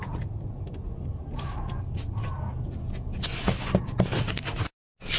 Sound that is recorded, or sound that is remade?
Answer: recorded